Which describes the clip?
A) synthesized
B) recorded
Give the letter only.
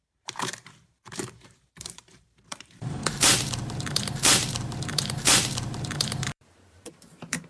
A